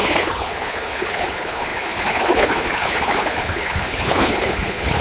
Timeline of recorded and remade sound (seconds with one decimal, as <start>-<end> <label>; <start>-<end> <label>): 0.0-5.0 remade